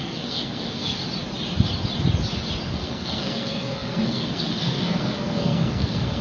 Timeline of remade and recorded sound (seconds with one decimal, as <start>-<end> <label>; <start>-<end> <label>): 0.0-1.0 remade; 1.0-2.7 recorded; 2.7-6.2 remade